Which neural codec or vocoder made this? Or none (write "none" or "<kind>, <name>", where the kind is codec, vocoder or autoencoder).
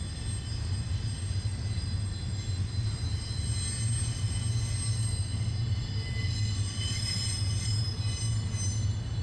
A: none